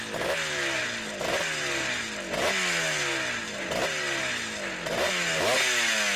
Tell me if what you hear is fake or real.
real